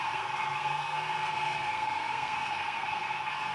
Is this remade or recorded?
remade